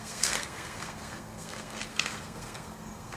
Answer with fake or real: fake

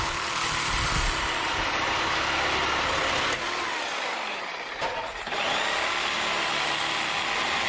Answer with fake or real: real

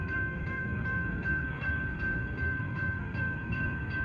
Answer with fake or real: fake